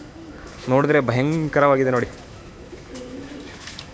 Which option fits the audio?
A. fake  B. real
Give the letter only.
A